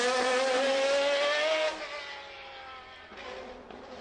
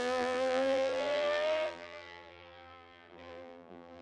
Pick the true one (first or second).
first